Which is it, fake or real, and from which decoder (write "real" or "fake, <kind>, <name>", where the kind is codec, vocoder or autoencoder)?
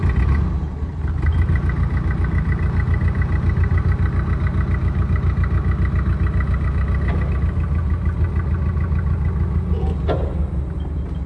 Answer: real